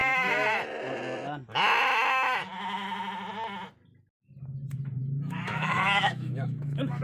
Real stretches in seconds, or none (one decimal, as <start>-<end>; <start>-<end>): 0.0-5.0